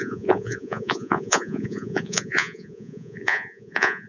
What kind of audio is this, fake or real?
fake